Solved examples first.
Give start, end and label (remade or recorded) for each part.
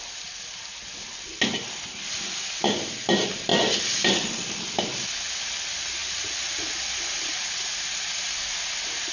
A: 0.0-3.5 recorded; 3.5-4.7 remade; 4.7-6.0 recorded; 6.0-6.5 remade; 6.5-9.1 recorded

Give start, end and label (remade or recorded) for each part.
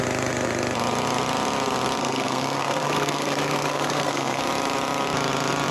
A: 0.0-2.0 recorded; 2.0-4.4 remade; 4.4-5.7 recorded